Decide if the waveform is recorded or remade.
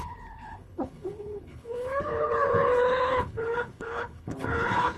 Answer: remade